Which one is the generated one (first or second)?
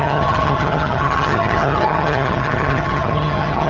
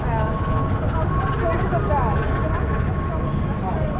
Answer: first